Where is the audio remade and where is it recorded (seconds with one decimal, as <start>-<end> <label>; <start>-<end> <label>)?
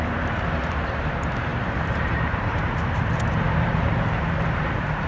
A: 0.0-5.1 remade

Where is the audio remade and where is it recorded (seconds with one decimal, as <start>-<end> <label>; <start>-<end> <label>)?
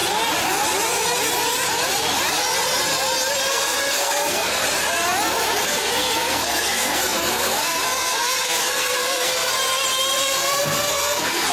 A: 0.0-3.5 recorded; 3.5-4.6 remade; 4.6-5.6 recorded; 5.6-9.5 remade; 9.5-10.2 recorded; 10.2-11.5 remade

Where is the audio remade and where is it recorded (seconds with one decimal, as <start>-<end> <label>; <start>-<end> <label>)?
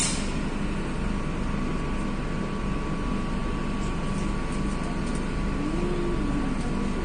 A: 0.0-7.0 recorded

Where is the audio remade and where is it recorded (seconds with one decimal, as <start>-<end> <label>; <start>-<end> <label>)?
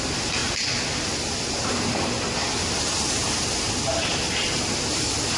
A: 0.0-0.4 remade; 0.4-3.6 recorded; 3.6-5.4 remade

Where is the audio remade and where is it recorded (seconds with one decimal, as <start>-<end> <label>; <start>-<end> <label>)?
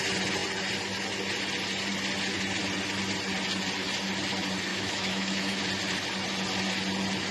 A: 0.0-4.7 recorded; 4.7-5.6 remade; 5.6-7.3 recorded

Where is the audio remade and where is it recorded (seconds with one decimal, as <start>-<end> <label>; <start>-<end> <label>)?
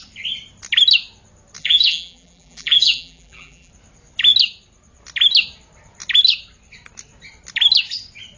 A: 0.0-1.6 recorded; 1.6-3.7 remade; 3.7-8.4 recorded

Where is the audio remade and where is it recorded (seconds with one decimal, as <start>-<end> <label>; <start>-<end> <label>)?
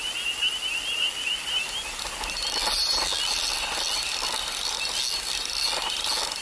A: 0.0-6.4 recorded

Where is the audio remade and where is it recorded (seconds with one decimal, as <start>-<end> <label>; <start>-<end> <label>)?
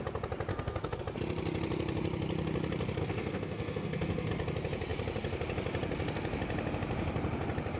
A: 0.0-0.5 recorded; 0.5-1.0 remade; 1.0-3.0 recorded; 3.0-4.3 remade; 4.3-7.8 recorded